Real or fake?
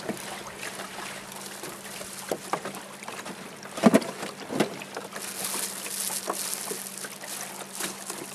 real